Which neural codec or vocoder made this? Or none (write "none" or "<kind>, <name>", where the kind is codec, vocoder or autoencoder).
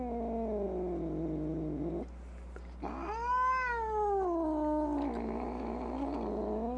none